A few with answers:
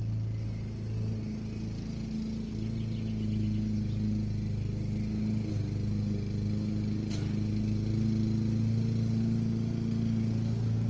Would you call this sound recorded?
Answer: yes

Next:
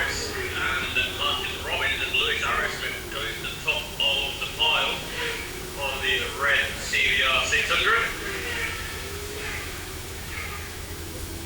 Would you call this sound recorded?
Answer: no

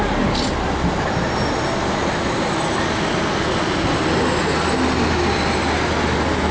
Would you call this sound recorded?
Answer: yes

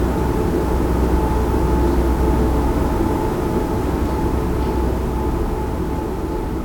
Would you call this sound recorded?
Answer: yes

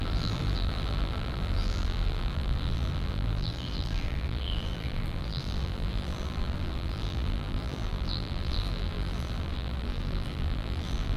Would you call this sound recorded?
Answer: no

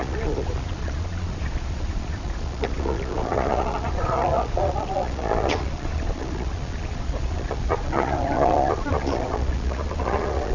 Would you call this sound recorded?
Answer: no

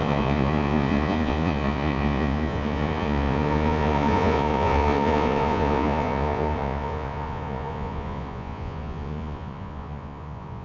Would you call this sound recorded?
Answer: no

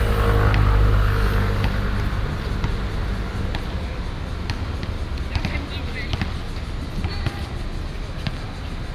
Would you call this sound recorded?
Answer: yes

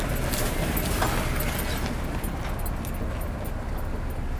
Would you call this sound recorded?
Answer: yes